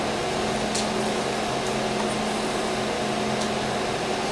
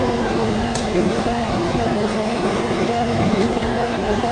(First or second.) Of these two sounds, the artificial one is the second